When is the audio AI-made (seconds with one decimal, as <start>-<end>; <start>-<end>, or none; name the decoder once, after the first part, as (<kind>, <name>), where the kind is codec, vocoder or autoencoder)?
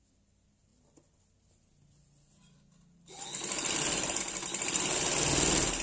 none